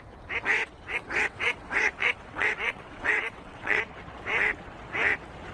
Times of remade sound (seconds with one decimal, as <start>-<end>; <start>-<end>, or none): 0.5-3.8